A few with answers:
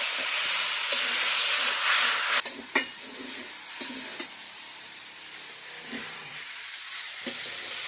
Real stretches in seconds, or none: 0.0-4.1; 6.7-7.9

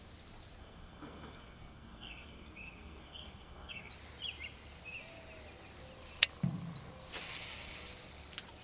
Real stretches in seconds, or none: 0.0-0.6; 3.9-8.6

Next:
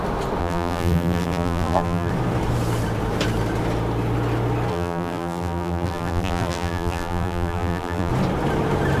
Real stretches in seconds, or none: 0.0-0.4; 2.1-4.7; 8.1-9.0